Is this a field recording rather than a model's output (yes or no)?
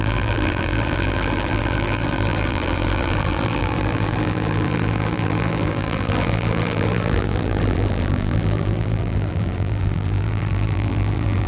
no